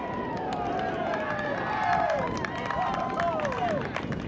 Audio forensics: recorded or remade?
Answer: recorded